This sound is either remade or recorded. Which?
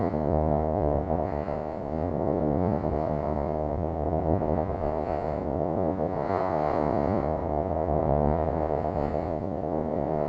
remade